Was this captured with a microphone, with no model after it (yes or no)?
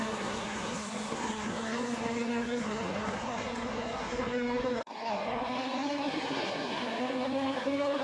no